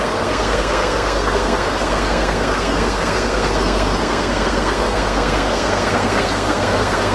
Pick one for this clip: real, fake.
fake